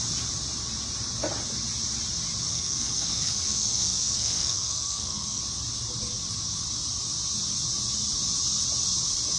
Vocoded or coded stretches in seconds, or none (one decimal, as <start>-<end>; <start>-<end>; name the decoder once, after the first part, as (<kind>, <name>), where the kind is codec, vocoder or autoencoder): 2.5-5.4 (codec, SNAC)